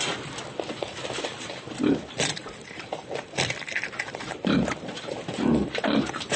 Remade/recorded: remade